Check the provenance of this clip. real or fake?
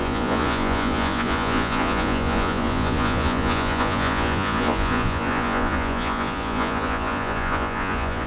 fake